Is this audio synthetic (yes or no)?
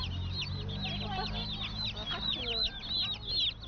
no